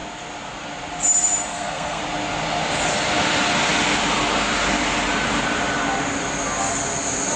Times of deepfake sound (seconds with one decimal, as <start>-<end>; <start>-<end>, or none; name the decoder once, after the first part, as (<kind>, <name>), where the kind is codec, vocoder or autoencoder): 1.5-2.0 (codec, SNAC)